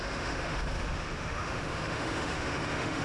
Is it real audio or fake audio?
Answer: fake